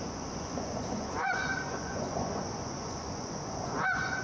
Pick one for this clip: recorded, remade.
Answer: remade